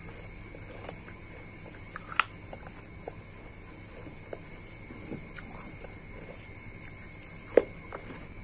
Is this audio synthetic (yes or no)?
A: no